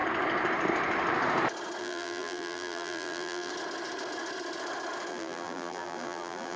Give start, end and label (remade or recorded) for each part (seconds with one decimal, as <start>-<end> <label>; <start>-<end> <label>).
0.0-1.8 recorded; 1.8-3.5 remade; 3.5-5.1 recorded; 5.1-6.6 remade